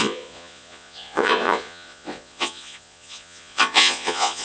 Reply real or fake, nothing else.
fake